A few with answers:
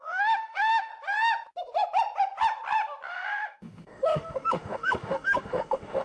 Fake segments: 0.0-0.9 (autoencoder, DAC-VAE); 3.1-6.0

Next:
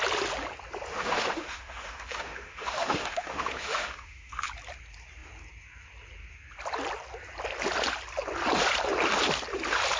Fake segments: 0.9-4.5 (autoencoder, DAC-VAE)

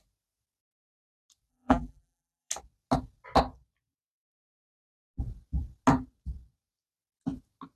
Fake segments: 1.5-2.5 (vocoder, BigVGAN v2)

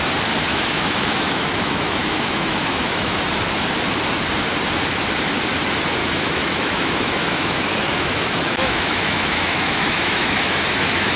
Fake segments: 0.5-3.2 (autoencoder, DAC-VAE); 6.0-11.2

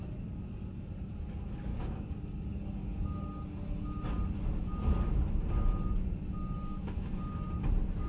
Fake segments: 1.7-3.2 (codec, DAC); 6.7-7.2

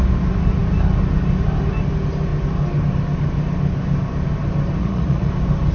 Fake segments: 4.8-5.3 (vocoder, Vocos)

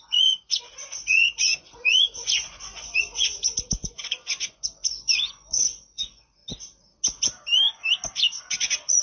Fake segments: 0.0-6.4 (vocoder, Vocos); 8.4-9.0